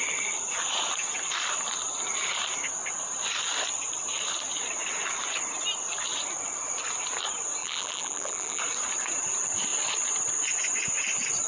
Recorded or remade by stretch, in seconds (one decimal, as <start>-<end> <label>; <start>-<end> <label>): 0.0-7.6 recorded; 7.6-8.6 remade; 8.6-11.5 recorded